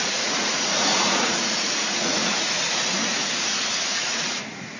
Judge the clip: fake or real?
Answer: fake